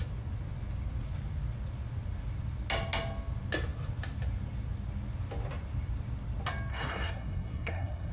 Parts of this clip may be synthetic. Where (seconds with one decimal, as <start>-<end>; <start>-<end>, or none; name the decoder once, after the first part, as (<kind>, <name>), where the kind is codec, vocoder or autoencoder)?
6.7-8.1 (codec, SNAC)